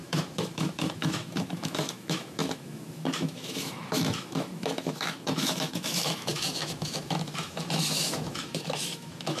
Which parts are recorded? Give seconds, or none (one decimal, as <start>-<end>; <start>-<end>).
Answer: none